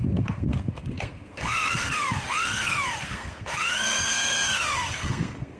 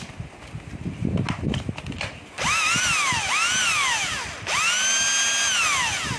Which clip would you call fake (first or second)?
first